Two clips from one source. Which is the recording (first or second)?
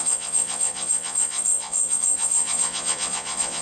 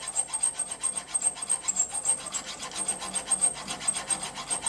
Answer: second